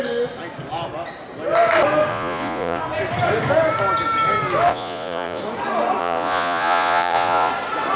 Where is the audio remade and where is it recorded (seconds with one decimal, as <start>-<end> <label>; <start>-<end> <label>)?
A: 0.0-2.1 recorded; 2.1-2.8 remade; 2.8-4.7 recorded; 4.7-5.4 remade; 5.4-6.0 recorded; 6.0-7.5 remade; 7.5-8.0 recorded